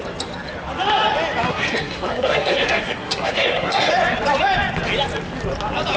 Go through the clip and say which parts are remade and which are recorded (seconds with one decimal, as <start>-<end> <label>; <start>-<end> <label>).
0.0-1.5 recorded; 1.5-3.9 remade; 3.9-6.0 recorded